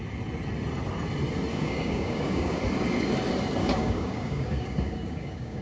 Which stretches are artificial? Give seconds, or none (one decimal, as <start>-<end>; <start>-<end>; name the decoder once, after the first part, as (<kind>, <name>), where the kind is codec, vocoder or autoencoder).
1.5-2.6 (codec, DAC); 3.6-5.6